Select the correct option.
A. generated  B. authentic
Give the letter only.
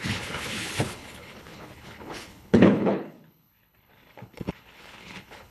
A